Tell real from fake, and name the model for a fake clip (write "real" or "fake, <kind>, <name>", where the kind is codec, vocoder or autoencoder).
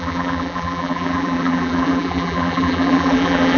fake, vocoder, BigVGAN v2